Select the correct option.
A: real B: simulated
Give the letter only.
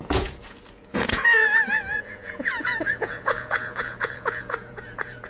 B